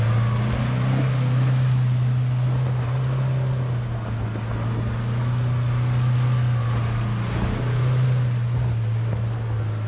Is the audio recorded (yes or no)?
yes